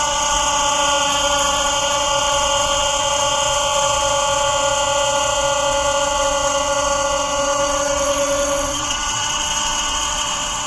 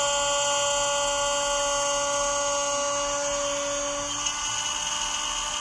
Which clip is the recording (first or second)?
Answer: second